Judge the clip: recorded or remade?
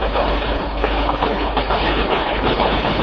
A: remade